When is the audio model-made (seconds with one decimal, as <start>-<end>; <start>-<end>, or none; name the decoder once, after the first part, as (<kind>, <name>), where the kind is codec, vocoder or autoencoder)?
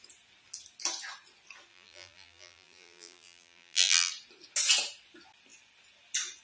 1.7-4.1 (vocoder, BigVGAN v2)